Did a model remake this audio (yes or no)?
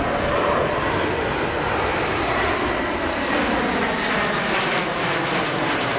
no